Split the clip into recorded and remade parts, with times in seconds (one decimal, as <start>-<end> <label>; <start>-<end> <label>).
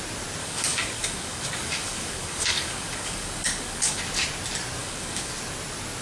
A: 0.0-0.4 recorded; 0.4-4.0 remade; 4.0-4.8 recorded; 4.8-5.3 remade; 5.3-6.0 recorded